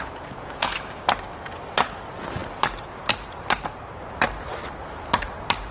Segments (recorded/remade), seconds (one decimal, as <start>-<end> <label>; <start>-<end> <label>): 0.0-1.0 remade; 1.0-5.7 recorded